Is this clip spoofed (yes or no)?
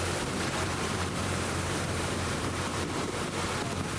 yes